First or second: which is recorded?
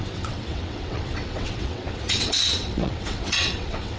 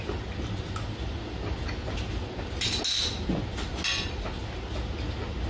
second